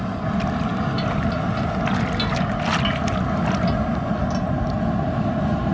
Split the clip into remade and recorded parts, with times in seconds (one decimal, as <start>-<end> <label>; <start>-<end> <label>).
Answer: 0.0-5.7 recorded